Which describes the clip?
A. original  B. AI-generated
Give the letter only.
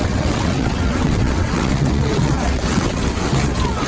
B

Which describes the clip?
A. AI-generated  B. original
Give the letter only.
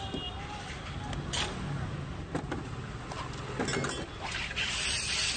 B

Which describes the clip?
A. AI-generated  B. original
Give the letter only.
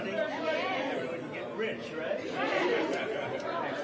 B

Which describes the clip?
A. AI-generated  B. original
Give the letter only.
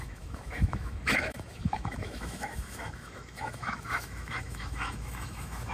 A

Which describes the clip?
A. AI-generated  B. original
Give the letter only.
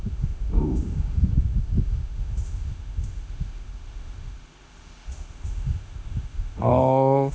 A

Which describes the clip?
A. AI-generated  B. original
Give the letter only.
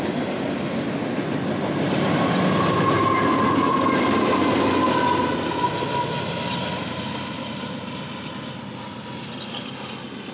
B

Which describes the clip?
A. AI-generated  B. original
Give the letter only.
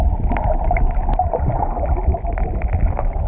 B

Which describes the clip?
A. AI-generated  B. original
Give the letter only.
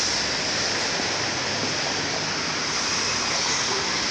B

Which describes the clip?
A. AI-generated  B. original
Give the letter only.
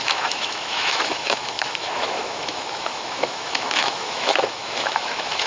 A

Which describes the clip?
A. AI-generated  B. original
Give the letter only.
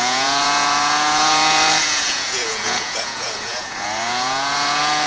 A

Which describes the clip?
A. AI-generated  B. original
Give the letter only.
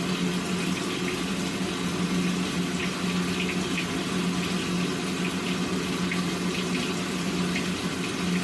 B